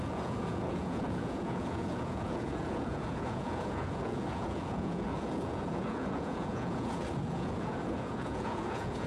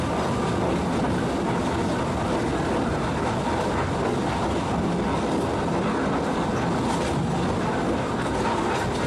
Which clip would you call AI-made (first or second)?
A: first